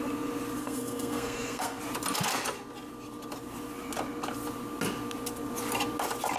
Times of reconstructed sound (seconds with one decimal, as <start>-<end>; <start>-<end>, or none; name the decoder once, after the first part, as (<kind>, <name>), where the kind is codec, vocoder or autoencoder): 0.6-1.8 (codec, SNAC)